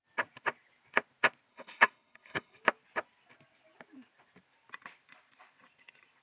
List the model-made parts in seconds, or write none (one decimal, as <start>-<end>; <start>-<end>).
1.5-2.6